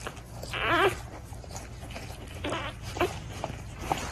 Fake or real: fake